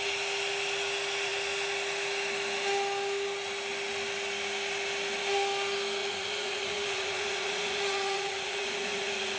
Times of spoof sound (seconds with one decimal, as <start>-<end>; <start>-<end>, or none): 6.0-9.4